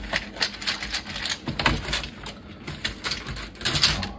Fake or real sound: real